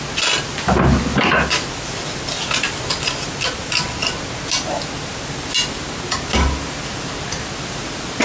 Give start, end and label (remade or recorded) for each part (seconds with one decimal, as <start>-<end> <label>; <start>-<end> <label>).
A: 0.0-8.2 recorded

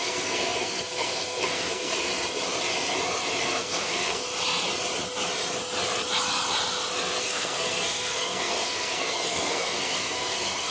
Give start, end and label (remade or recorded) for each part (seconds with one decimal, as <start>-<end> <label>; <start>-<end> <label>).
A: 0.0-2.1 remade; 2.1-3.4 recorded; 3.4-4.2 remade; 4.2-7.2 recorded; 7.2-10.7 remade

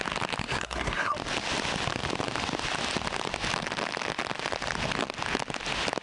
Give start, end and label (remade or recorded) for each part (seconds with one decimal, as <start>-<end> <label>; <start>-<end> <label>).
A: 0.0-0.4 recorded; 0.4-1.1 remade; 1.1-6.0 recorded

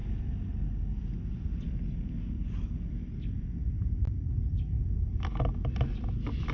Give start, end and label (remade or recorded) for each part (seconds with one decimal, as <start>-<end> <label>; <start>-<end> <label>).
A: 0.0-6.5 recorded

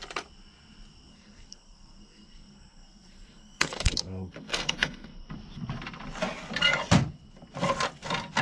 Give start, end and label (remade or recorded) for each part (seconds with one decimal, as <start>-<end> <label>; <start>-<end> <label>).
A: 0.0-1.1 recorded; 1.1-5.3 remade; 5.3-8.4 recorded

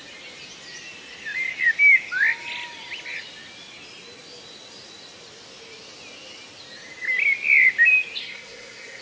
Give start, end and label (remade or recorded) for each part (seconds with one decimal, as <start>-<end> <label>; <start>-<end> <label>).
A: 0.0-8.2 recorded; 8.2-9.0 remade